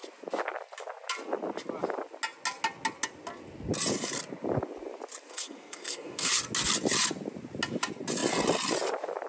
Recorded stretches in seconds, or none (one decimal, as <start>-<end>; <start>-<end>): 0.0-5.3; 6.3-9.3